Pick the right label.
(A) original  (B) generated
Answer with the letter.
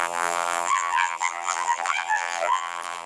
B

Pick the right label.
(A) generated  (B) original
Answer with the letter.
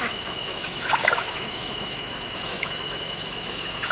A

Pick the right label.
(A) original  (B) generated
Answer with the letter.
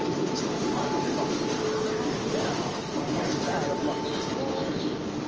A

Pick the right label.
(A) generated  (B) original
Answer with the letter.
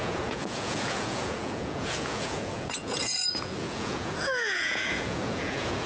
A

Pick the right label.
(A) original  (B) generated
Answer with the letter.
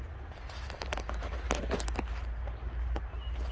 A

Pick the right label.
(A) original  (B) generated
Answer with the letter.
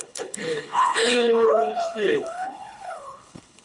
B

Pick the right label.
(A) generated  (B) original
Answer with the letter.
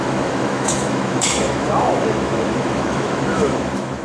A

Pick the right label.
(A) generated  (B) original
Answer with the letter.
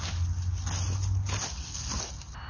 B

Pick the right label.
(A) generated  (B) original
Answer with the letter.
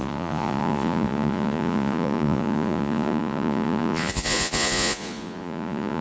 A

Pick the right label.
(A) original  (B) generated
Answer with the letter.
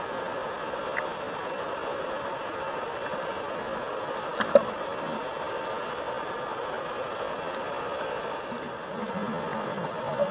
A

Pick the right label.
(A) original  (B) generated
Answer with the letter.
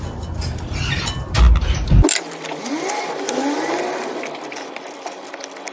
A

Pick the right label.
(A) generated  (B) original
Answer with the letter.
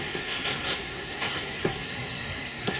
A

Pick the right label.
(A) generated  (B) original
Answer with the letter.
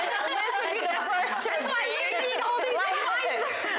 B